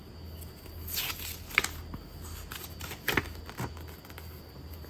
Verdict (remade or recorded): recorded